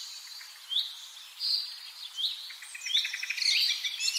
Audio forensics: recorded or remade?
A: remade